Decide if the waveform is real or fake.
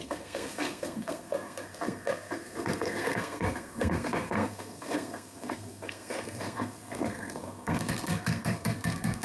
fake